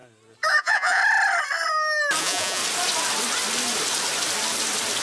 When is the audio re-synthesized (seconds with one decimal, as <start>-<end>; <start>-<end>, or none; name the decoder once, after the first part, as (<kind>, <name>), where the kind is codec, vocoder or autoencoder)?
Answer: 0.6-1.0 (vocoder, Vocos); 2.2-2.6